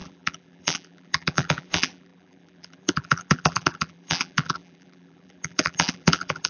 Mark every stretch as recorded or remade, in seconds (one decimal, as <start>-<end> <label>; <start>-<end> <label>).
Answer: 0.0-6.5 remade